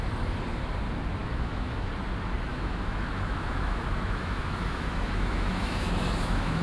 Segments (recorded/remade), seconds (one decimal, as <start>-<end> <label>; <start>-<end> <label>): 0.0-1.2 recorded; 1.2-1.9 remade; 1.9-2.5 recorded; 2.5-6.6 remade